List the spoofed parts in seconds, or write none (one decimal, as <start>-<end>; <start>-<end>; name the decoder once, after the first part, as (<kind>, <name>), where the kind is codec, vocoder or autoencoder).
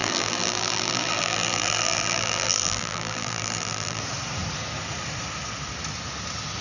0.0-4.0 (vocoder, BigVGAN v2)